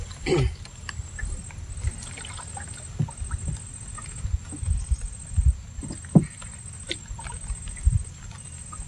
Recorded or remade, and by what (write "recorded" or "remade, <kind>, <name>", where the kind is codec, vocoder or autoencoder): recorded